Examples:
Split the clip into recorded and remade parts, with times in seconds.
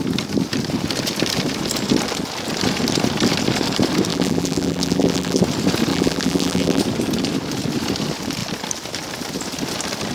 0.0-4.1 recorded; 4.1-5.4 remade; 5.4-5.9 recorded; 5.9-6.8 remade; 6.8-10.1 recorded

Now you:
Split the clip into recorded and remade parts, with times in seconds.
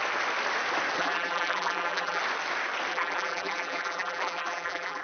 0.0-1.0 recorded; 1.0-2.2 remade; 2.2-2.9 recorded; 2.9-5.0 remade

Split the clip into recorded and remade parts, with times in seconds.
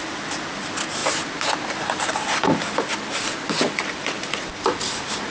0.0-1.0 remade; 1.0-1.7 recorded; 1.7-2.9 remade; 2.9-3.6 recorded; 3.6-5.3 remade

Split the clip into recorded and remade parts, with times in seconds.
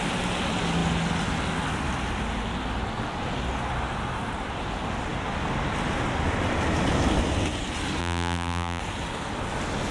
0.0-8.0 recorded; 8.0-8.8 remade; 8.8-9.9 recorded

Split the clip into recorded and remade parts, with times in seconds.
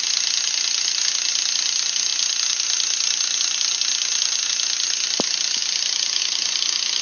0.0-7.0 recorded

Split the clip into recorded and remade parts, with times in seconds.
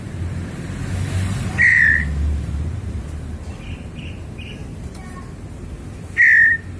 0.0-1.7 recorded; 1.7-3.0 remade; 3.0-4.7 recorded; 4.7-5.2 remade; 5.2-6.8 recorded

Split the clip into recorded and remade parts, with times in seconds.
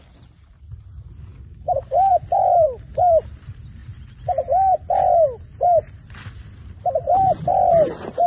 0.0-1.3 remade; 1.3-2.1 recorded; 2.1-3.8 remade; 3.8-5.9 recorded; 5.9-8.3 remade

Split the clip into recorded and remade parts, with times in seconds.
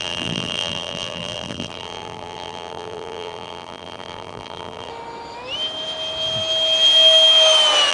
0.0-4.9 remade; 4.9-7.9 recorded